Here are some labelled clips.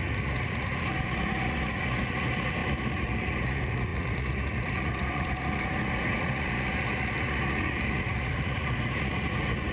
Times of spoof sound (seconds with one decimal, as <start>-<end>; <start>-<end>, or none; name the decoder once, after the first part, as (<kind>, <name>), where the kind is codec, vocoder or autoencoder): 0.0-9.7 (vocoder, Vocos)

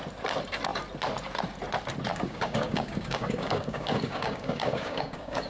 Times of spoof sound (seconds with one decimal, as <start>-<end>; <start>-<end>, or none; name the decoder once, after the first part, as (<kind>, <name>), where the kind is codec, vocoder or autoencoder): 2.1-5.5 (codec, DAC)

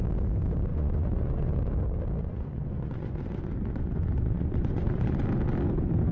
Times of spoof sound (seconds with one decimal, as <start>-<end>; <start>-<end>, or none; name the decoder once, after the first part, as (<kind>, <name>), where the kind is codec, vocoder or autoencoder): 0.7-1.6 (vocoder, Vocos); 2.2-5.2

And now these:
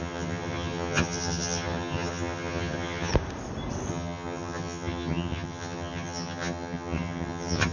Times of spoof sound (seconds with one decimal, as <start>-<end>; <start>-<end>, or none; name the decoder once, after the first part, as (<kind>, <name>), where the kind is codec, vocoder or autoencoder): 0.0-3.1 (vocoder, HiFi-GAN); 3.9-7.7

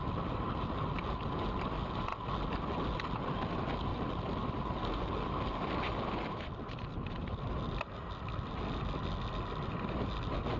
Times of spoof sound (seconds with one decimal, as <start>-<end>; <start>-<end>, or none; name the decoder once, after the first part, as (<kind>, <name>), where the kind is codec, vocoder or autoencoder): none